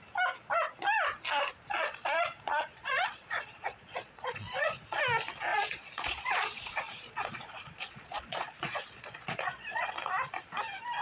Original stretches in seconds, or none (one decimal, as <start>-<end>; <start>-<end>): 0.0-1.7; 5.0-5.5; 9.9-11.0